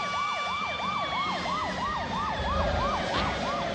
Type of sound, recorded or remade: recorded